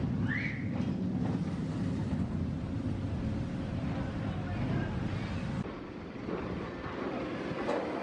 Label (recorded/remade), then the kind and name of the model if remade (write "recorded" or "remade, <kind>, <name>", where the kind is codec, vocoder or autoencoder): recorded